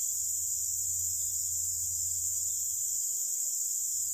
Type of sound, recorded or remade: recorded